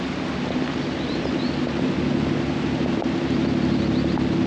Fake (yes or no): no